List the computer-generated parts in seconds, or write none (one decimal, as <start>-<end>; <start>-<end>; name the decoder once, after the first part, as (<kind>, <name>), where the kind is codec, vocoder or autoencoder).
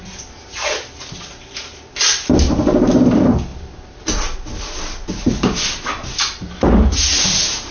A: none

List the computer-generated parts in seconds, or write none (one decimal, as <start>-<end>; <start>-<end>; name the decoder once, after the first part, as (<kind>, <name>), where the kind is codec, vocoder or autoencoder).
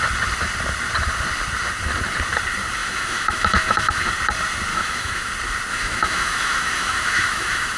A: 2.8-4.1 (autoencoder, DAC-VAE); 4.7-5.3; 5.7-7.8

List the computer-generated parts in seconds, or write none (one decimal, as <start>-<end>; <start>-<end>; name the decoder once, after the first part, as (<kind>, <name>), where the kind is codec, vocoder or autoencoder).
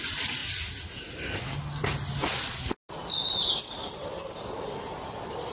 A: none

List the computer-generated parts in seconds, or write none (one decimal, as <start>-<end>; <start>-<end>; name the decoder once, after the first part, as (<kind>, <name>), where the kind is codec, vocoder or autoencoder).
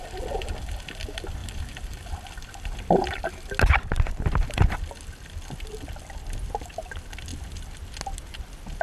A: none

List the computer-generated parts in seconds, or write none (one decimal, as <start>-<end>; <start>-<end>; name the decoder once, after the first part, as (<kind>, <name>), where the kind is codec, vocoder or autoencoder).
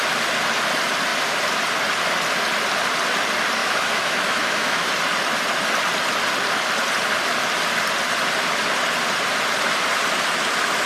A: 3.6-4.9 (autoencoder, DAC-VAE)